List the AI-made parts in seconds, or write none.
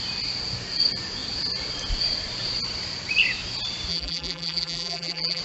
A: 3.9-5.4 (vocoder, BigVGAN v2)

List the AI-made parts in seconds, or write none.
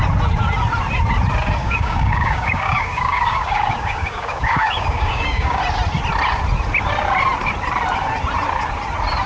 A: 1.6-5.6 (codec, DAC)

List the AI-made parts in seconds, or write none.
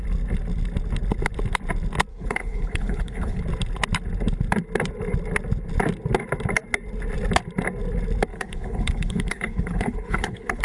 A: 2.1-3.4 (codec, HILCodec); 8.3-10.6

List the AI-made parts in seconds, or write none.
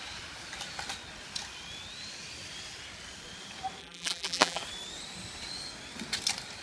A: 3.8-4.6 (vocoder, BigVGAN v2)